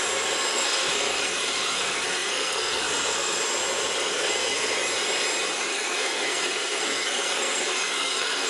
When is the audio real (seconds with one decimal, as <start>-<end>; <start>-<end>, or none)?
0.0-0.5; 3.4-4.1; 4.7-5.7